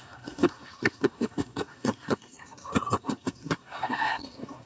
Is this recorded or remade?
remade